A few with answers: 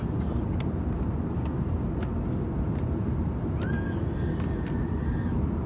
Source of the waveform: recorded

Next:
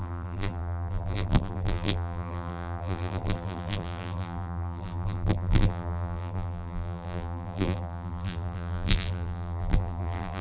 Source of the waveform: remade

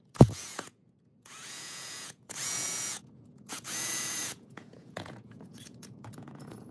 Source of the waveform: remade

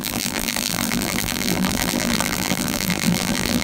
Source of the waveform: remade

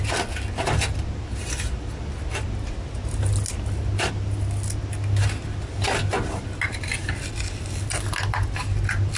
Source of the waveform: recorded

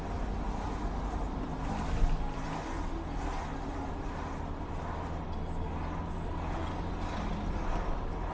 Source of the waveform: recorded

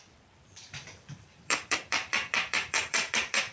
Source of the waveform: remade